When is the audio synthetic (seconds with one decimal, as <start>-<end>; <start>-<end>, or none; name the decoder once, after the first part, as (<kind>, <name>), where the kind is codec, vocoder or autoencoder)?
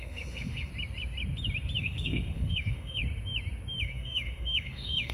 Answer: 0.0-0.7 (autoencoder, DAC-VAE); 1.8-3.0; 3.8-5.1